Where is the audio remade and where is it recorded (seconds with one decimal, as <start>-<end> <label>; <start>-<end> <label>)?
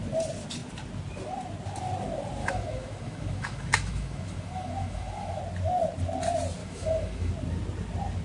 0.0-2.4 recorded; 2.4-5.4 remade; 5.4-6.6 recorded; 6.6-7.3 remade; 7.3-8.2 recorded